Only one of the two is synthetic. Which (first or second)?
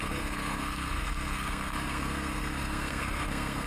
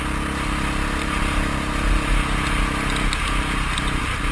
first